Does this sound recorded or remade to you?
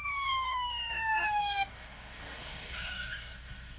remade